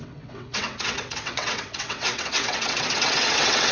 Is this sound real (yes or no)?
no